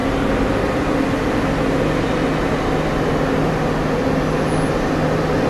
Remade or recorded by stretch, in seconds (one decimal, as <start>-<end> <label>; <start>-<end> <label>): 0.0-5.5 recorded